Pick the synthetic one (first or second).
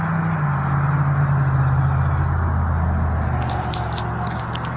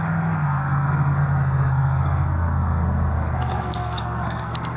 second